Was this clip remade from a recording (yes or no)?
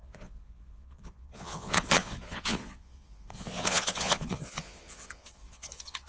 yes